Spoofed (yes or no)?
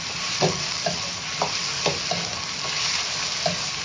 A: no